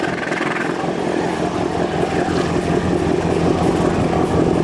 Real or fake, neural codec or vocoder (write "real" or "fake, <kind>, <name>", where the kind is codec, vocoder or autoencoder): real